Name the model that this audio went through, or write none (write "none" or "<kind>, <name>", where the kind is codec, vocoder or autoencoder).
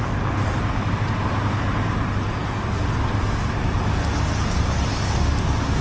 none